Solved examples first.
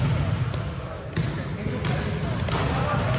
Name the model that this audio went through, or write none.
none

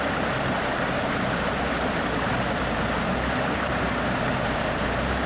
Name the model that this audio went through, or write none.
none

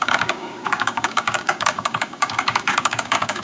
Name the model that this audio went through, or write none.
codec, DAC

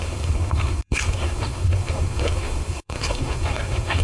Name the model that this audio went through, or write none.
codec, SNAC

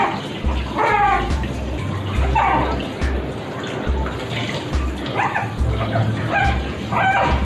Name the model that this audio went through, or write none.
none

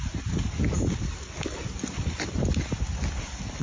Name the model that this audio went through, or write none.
none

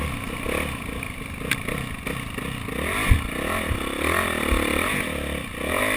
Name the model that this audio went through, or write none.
none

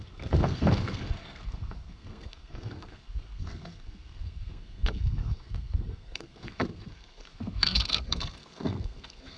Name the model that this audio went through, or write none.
codec, SNAC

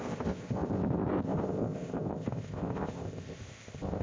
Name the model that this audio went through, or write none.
codec, ZipCodec